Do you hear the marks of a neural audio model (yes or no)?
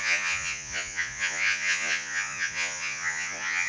yes